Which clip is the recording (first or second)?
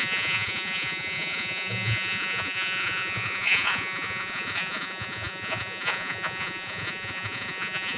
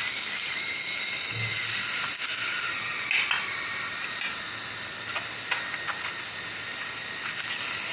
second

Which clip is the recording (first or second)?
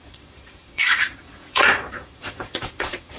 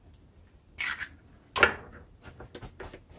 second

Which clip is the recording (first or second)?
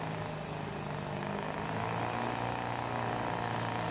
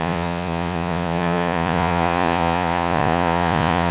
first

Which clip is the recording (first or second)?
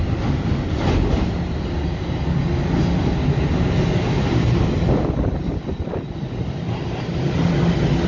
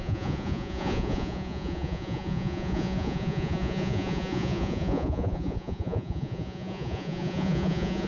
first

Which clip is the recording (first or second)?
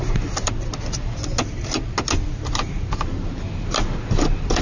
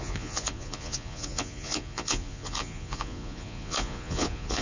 first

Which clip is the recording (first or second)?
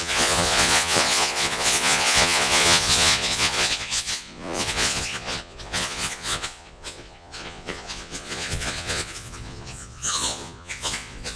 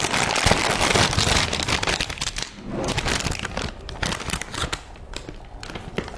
second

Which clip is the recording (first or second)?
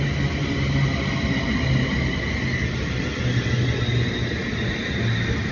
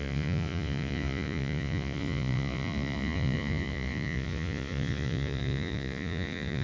first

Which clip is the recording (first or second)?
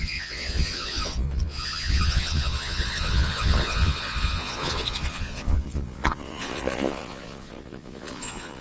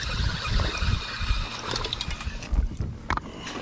second